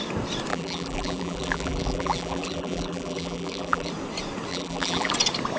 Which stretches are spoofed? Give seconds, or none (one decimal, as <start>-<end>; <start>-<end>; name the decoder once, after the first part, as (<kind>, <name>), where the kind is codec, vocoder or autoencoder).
0.5-3.9 (vocoder, BigVGAN v2); 4.5-5.1